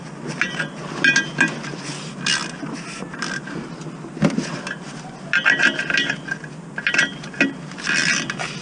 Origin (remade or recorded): recorded